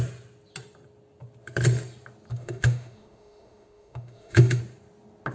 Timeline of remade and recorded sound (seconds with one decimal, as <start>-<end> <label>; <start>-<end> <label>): 0.0-2.3 recorded; 2.3-4.6 remade; 4.6-5.3 recorded